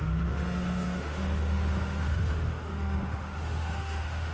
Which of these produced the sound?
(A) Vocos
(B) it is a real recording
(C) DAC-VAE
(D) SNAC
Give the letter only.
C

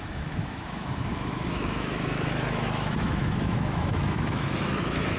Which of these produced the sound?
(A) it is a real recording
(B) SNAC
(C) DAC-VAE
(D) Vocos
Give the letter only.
C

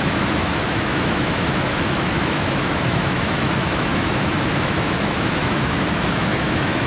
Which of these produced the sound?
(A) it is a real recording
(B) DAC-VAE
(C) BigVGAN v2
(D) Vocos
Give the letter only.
B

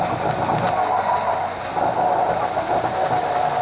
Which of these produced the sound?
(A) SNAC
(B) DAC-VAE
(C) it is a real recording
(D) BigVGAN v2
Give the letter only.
C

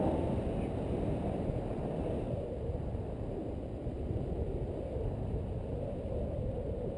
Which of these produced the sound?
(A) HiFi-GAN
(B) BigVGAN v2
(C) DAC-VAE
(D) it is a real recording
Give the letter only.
D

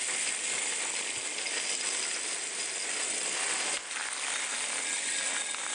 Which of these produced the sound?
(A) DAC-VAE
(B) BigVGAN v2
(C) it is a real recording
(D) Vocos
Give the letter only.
C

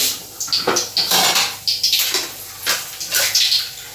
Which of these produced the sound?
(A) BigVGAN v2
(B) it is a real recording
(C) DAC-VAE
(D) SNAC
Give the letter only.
B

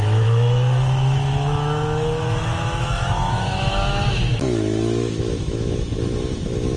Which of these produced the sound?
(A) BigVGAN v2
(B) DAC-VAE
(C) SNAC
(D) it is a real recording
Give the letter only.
B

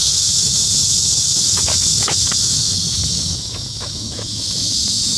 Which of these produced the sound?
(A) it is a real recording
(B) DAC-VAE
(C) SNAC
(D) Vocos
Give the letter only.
B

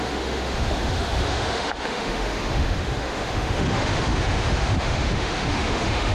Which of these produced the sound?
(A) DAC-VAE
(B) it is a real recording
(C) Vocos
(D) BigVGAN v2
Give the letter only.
A